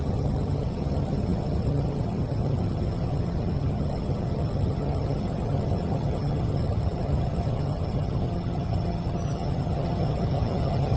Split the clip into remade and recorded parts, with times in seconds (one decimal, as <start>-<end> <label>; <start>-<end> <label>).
0.0-11.0 remade